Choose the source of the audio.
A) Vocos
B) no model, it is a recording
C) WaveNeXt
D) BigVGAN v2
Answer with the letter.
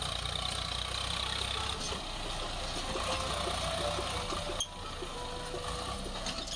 B